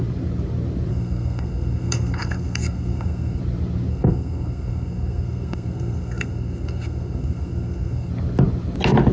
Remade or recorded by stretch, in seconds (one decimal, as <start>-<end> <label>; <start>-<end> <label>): 0.0-0.9 recorded; 0.9-3.4 remade; 3.4-3.9 recorded; 3.9-8.1 remade; 8.1-9.1 recorded